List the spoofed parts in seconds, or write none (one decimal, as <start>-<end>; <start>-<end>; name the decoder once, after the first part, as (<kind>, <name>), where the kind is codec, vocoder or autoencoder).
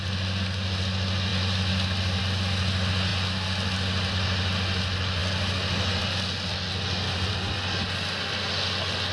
none